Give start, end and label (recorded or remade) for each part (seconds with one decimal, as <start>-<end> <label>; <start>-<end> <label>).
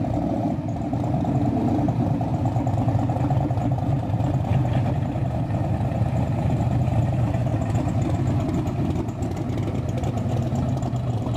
0.0-7.5 remade; 7.5-10.3 recorded; 10.3-11.4 remade